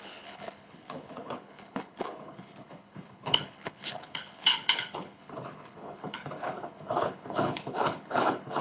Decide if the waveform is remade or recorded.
remade